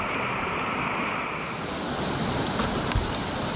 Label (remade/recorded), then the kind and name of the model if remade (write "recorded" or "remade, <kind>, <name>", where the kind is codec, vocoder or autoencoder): recorded